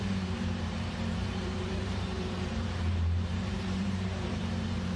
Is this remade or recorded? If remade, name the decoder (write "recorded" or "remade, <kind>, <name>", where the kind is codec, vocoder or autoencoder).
remade, vocoder, BigVGAN v2